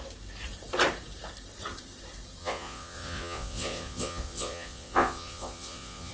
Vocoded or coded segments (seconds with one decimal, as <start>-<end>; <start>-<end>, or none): 2.4-6.1

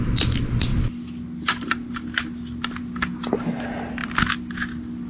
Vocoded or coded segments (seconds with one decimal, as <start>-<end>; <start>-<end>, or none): none

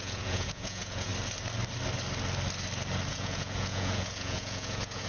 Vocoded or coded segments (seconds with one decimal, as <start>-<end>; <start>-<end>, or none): 0.0-1.1; 3.1-5.1

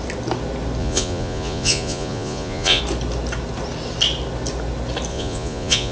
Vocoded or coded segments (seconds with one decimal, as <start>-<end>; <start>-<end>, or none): 0.8-2.8; 5.1-5.9

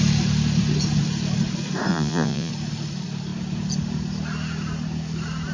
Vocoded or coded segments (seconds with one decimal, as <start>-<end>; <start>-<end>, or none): 1.9-2.5

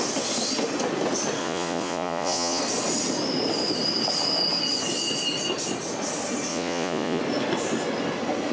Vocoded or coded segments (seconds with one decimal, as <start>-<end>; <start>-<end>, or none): 1.4-2.6; 6.5-7.2

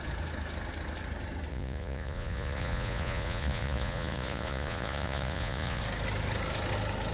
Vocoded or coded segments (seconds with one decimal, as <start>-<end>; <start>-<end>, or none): 1.5-5.8